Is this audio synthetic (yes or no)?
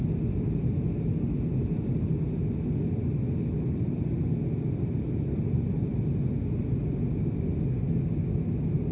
no